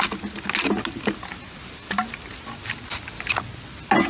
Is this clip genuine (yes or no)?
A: yes